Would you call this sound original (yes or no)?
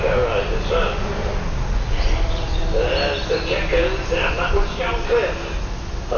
yes